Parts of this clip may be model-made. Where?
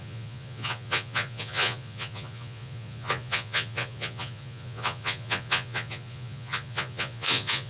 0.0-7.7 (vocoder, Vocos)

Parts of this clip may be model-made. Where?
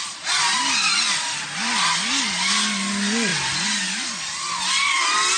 none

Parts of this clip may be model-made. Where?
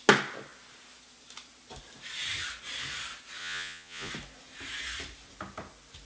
3.4-4.1 (vocoder, Vocos)